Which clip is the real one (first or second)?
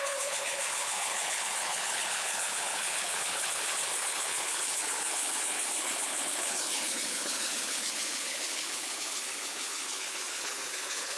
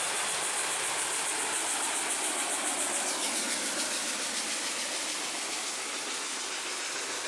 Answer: second